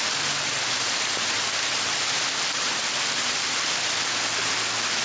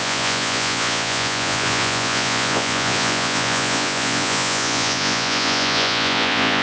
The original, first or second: first